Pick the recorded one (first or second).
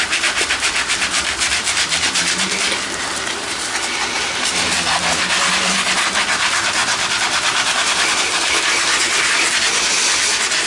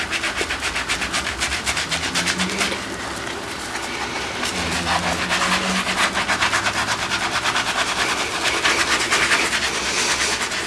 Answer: second